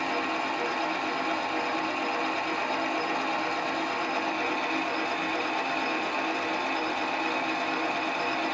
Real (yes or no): yes